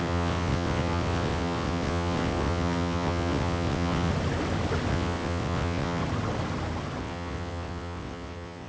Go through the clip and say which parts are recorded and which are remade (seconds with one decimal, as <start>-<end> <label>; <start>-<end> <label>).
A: 0.0-4.1 remade; 4.1-4.9 recorded; 4.9-6.0 remade; 6.0-7.0 recorded; 7.0-8.7 remade